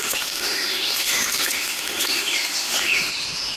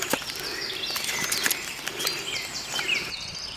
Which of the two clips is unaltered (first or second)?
second